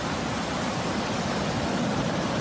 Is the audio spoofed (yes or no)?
no